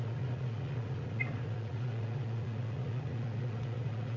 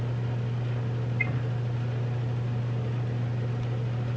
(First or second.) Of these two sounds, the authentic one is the second